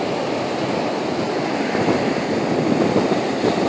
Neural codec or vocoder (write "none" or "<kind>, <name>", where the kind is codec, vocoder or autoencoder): none